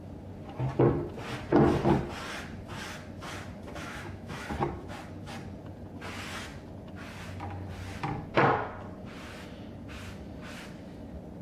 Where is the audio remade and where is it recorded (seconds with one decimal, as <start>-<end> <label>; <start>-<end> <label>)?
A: 0.0-3.8 recorded; 3.8-4.5 remade; 4.5-11.4 recorded